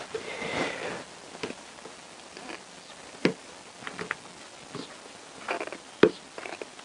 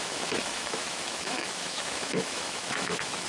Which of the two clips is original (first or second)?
first